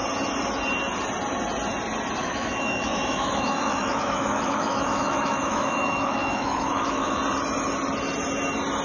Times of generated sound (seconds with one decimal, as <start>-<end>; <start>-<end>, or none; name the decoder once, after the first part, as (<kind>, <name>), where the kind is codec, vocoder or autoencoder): 2.2-7.2 (autoencoder, DAC-VAE)